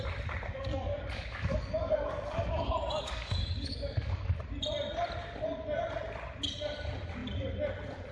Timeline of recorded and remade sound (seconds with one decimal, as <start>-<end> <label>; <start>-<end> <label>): 0.0-0.5 recorded; 0.5-4.4 remade; 4.4-8.1 recorded